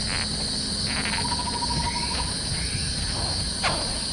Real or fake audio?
real